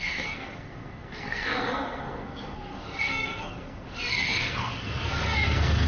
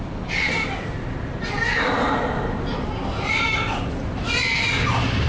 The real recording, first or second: second